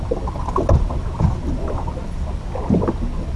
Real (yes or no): yes